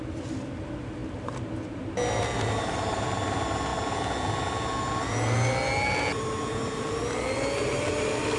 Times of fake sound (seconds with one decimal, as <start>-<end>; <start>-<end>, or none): none